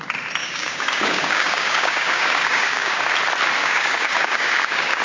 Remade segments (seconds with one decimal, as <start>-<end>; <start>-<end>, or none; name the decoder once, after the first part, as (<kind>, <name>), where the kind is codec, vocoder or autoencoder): 0.4-3.1 (codec, DAC); 3.6-5.0